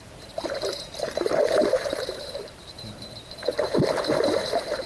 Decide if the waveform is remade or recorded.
remade